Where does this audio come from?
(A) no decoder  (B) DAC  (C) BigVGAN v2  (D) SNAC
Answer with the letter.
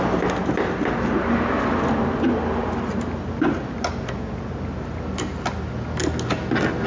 A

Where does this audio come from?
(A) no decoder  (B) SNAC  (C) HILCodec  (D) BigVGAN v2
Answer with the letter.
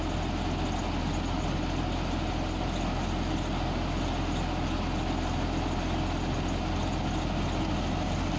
A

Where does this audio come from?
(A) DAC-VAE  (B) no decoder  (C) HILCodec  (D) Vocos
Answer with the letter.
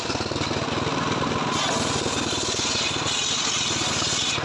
B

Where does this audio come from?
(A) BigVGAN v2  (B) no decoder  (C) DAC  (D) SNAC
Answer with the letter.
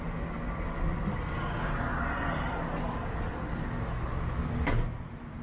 B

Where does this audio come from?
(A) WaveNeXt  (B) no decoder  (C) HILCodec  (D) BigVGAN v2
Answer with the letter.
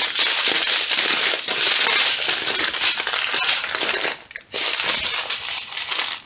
B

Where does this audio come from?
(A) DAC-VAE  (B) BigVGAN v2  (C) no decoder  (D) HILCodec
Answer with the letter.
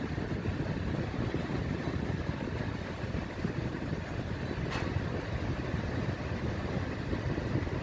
C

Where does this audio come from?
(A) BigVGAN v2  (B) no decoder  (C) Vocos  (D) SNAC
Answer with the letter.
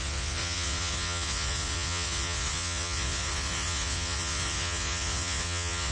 C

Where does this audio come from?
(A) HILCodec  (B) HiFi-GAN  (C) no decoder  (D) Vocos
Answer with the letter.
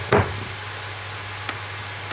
C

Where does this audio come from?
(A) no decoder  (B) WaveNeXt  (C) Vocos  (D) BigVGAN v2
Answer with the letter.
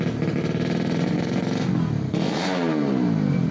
A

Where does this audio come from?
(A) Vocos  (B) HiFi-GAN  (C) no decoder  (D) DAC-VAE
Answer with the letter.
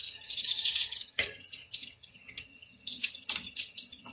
B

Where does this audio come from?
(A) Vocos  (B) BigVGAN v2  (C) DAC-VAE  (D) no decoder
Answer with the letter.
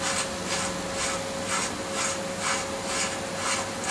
D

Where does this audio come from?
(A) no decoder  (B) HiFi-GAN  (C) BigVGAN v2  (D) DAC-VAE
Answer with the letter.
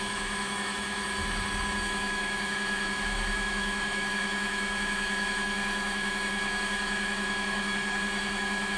D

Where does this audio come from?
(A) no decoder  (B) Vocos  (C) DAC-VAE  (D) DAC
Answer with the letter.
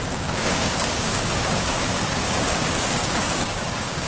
D